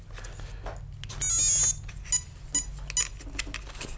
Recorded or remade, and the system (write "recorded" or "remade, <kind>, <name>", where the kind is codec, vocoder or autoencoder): recorded